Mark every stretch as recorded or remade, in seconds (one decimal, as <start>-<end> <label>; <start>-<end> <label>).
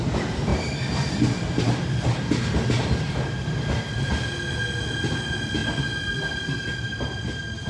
0.0-0.5 recorded; 0.5-2.9 remade; 2.9-7.7 recorded